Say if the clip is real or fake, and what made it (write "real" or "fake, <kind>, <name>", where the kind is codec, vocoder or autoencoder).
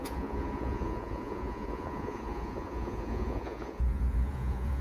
fake, vocoder, Vocos